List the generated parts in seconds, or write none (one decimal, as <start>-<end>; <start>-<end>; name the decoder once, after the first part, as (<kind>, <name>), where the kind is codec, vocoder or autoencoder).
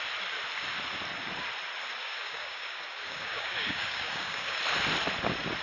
2.0-4.6 (codec, DAC)